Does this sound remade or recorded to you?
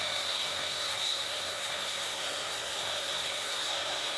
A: remade